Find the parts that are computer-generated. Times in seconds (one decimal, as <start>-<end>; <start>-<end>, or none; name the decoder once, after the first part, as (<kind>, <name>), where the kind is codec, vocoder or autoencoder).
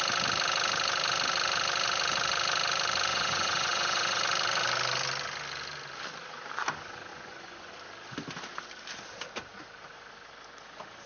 3.1-4.2 (vocoder, Vocos); 7.1-7.7